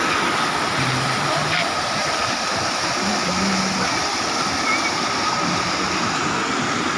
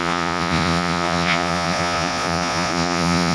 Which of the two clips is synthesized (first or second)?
second